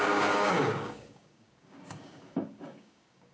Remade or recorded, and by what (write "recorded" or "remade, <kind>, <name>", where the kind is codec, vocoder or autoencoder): remade, codec, DAC